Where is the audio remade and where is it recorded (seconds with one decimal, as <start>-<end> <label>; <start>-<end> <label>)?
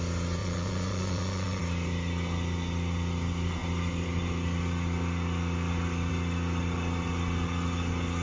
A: 0.0-0.4 recorded; 0.4-1.6 remade; 1.6-8.2 recorded